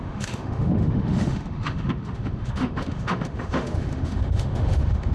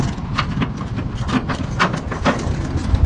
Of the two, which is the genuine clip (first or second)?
second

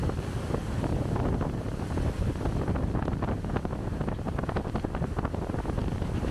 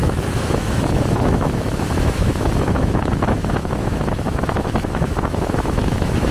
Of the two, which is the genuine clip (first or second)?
first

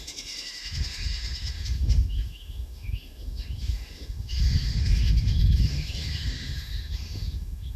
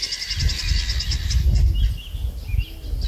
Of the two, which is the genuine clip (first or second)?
second